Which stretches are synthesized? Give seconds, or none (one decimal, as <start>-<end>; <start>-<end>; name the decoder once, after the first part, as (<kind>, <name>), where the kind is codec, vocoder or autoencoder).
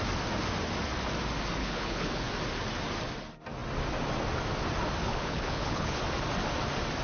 1.6-2.3 (codec, HILCodec); 5.0-6.0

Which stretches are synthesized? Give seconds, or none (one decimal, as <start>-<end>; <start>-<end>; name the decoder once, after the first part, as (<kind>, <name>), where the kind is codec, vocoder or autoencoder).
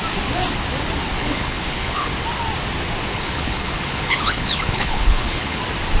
1.2-2.1 (codec, HILCodec); 3.1-5.6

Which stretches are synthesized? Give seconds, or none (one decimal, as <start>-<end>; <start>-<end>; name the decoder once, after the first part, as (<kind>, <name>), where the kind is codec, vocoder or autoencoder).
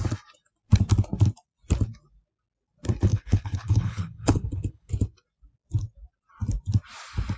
3.1-4.9 (codec, HILCodec)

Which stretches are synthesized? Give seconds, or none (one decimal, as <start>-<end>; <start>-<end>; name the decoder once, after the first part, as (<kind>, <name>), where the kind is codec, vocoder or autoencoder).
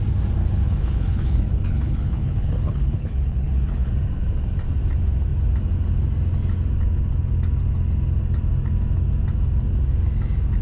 0.4-3.9 (codec, HILCodec)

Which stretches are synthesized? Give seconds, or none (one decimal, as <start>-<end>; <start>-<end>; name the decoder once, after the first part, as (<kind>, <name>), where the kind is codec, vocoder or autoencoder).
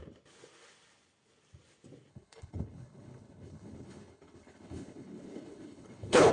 2.1-6.3 (codec, HILCodec)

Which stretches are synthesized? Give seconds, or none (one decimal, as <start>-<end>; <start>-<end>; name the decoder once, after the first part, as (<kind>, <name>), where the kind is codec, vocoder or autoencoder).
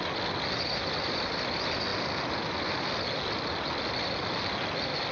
none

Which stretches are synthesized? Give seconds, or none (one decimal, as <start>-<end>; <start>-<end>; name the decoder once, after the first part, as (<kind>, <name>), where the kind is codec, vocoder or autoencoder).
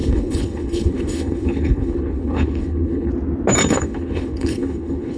0.0-3.1 (codec, HILCodec); 3.6-5.2